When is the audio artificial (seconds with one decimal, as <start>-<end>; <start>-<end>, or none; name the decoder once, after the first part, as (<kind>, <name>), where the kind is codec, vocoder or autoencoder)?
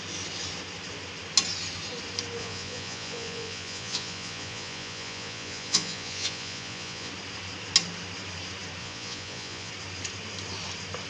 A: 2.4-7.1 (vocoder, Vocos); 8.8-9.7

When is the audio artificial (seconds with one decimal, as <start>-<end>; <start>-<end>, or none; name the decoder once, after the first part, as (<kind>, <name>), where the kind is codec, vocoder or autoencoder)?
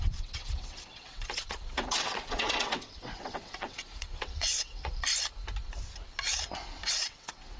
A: 0.0-5.1 (vocoder, WaveNeXt); 6.9-7.6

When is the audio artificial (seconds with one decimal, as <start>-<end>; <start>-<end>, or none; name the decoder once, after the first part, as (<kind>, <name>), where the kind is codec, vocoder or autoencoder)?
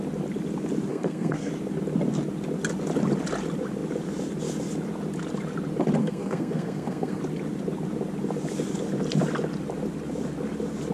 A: 0.9-1.5 (codec, SNAC); 6.0-7.2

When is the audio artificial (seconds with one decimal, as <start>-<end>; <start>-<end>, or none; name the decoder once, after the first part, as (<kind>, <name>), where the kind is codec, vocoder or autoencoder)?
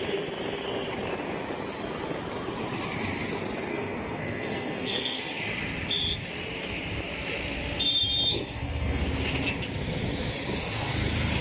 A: 3.7-5.2 (codec, SNAC); 8.3-9.0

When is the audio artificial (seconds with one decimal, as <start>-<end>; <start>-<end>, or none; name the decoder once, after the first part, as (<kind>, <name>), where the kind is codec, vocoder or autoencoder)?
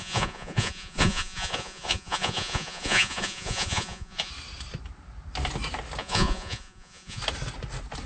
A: 0.0-4.3 (vocoder, Vocos); 6.0-7.2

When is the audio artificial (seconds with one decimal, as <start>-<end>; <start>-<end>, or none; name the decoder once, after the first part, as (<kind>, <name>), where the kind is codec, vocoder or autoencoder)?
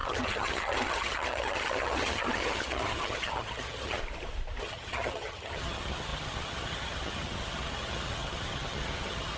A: 0.0-4.0 (vocoder, HiFi-GAN); 4.6-9.4